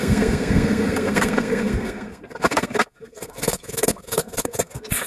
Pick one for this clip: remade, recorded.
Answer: remade